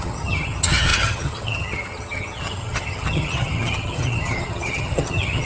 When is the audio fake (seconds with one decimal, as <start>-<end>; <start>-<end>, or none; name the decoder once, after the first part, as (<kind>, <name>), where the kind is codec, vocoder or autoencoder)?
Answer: 0.0-5.5 (vocoder, HiFi-GAN)